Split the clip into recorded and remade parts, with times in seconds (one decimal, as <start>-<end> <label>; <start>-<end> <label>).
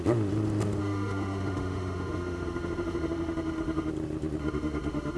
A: 0.0-0.8 recorded; 0.8-3.9 remade; 3.9-4.4 recorded; 4.4-5.2 remade